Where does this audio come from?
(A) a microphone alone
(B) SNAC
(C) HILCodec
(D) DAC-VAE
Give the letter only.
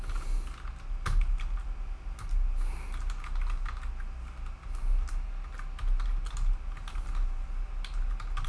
A